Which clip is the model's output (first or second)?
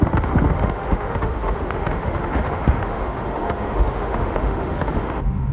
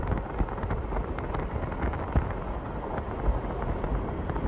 first